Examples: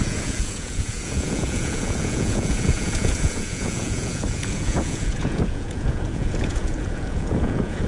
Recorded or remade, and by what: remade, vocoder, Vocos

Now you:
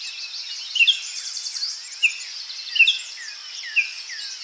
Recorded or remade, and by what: recorded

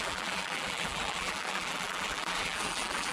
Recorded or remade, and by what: remade, vocoder, BigVGAN v2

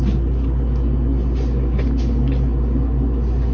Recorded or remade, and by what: recorded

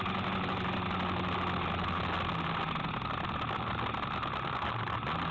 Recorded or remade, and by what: recorded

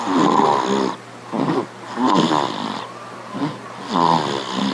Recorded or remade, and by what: recorded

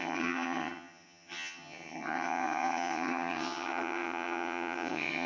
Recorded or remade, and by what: remade, vocoder, HiFi-GAN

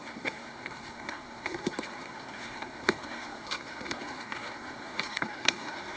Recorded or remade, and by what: remade, codec, SNAC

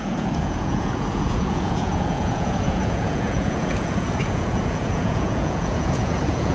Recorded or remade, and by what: remade, vocoder, Vocos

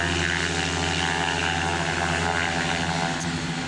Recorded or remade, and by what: recorded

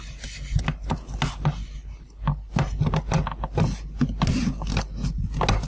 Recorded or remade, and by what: recorded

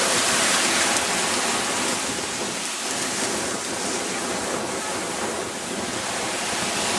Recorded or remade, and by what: recorded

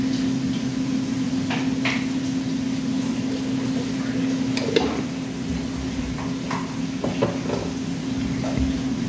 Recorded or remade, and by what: recorded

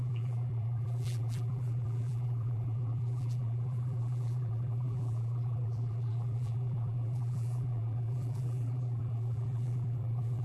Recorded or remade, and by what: remade, vocoder, BigVGAN v2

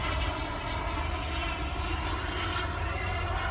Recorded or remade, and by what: recorded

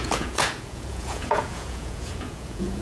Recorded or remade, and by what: remade, vocoder, Vocos